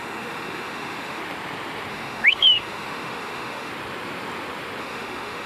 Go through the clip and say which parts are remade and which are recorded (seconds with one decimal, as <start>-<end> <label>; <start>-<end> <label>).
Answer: 0.0-1.2 remade; 1.2-1.9 recorded; 1.9-3.7 remade; 3.7-4.8 recorded; 4.8-5.5 remade

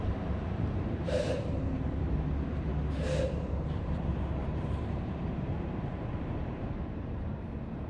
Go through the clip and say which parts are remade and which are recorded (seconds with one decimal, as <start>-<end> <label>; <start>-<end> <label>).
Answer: 0.0-2.7 remade; 2.7-3.3 recorded; 3.3-7.9 remade

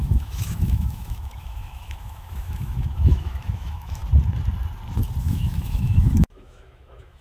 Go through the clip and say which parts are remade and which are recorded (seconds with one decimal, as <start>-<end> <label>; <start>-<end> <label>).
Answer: 0.0-4.0 remade; 4.0-5.2 recorded; 5.2-7.2 remade

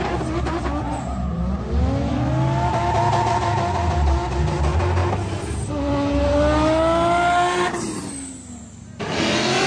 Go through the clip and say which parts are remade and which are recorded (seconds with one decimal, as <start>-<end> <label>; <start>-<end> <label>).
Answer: 0.0-9.7 recorded

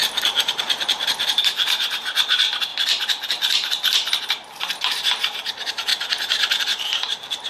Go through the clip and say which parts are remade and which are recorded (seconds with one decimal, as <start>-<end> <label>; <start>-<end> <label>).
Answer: 0.0-1.3 recorded; 1.3-2.7 remade; 2.7-4.2 recorded; 4.2-7.5 remade